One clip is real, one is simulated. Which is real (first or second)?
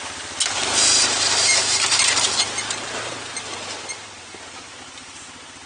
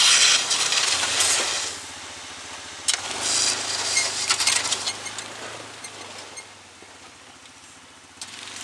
second